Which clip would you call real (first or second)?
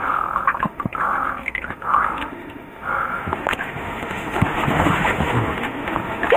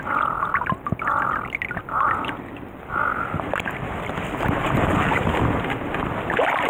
second